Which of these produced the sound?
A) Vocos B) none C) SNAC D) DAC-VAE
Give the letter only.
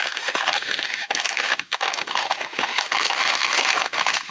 D